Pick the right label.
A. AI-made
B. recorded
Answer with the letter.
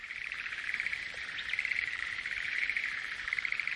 A